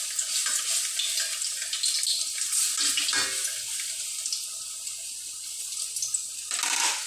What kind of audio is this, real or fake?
real